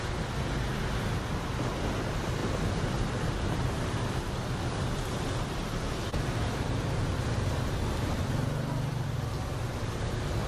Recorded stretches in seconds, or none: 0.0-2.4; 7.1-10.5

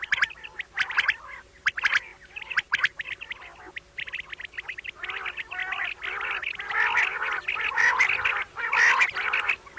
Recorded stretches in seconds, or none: 0.0-9.8

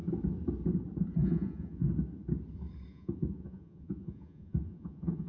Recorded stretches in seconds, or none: 0.0-1.2; 1.9-2.9

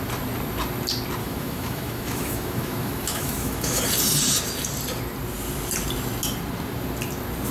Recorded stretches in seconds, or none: 0.0-1.2; 3.8-7.5

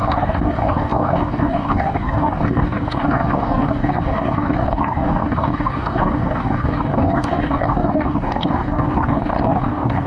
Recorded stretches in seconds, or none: none